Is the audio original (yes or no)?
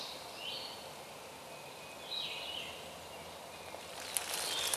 yes